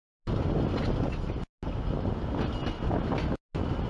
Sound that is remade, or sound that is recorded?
recorded